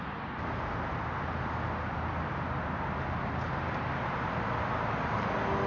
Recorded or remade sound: recorded